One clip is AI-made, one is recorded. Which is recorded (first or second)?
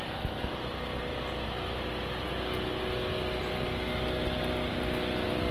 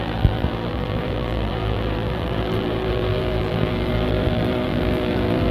first